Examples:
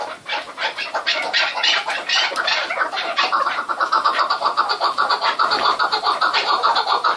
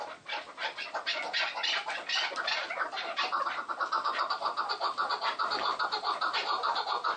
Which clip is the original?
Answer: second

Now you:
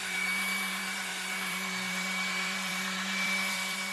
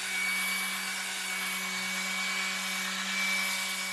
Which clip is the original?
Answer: second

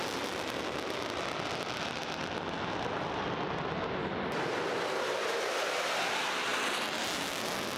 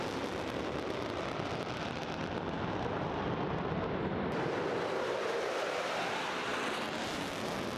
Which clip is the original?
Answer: first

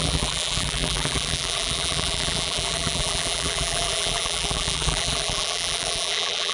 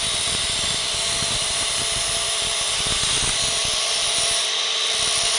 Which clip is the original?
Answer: second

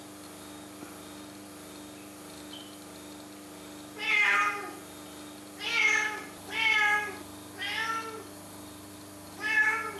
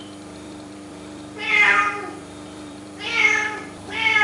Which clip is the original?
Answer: first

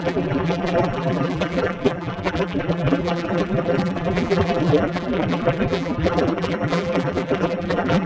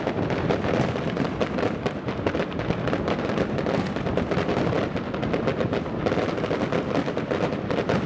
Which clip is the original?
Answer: second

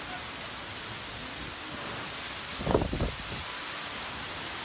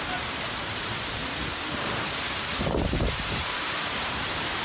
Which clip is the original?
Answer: first